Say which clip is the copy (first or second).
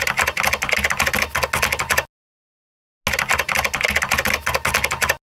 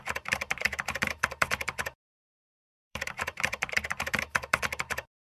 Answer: second